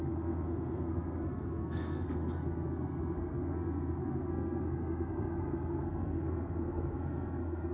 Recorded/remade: remade